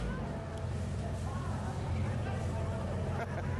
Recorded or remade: recorded